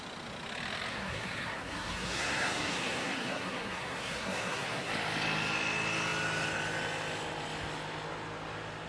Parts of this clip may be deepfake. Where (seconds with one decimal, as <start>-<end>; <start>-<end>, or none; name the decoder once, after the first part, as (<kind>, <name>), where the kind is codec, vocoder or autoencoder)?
0.9-4.9 (codec, SNAC)